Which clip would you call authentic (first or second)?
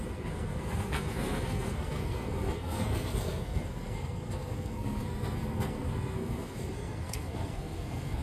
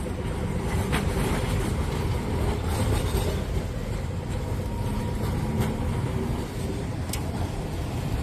second